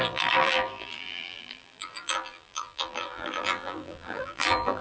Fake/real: fake